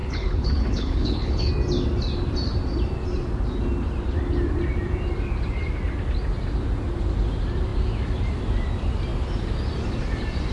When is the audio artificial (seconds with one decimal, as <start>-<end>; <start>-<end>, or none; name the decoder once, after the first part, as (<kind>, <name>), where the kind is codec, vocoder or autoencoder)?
0.0-1.5 (codec, HILCodec)